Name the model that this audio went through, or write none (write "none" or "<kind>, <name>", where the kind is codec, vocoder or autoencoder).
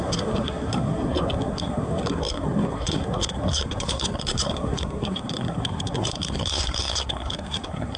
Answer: codec, SNAC